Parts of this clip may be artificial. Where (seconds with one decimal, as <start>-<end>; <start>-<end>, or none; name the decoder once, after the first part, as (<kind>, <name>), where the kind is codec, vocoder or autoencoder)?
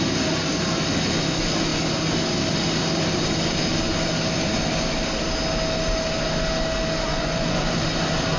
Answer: 7.1-7.7 (vocoder, Vocos)